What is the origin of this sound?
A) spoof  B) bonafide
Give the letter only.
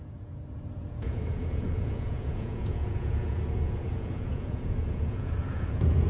A